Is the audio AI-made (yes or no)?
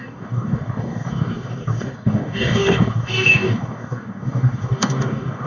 yes